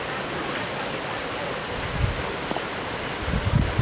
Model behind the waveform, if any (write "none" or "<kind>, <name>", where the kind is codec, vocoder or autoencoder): none